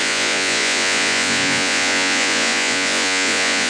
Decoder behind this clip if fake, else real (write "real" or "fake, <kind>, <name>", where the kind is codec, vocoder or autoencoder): fake, vocoder, Vocos